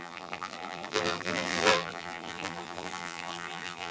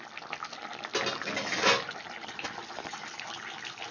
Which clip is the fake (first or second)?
first